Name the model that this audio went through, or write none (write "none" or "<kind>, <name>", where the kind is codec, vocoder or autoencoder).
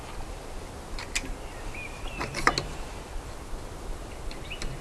none